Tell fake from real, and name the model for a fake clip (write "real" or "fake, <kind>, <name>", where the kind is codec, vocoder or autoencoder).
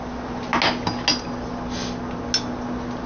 real